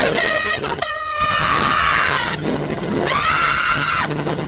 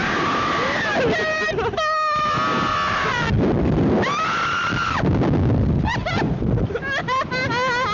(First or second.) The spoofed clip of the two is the first